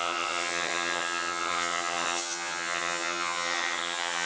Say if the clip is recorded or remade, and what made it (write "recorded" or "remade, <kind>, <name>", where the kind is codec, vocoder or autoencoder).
remade, vocoder, HiFi-GAN